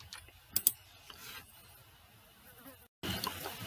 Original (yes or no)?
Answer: yes